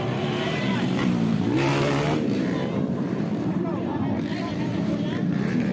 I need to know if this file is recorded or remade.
remade